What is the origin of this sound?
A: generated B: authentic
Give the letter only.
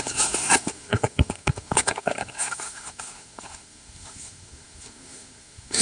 A